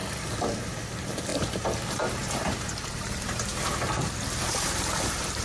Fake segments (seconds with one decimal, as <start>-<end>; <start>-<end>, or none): 0.6-1.3; 1.9-3.5; 4.5-5.4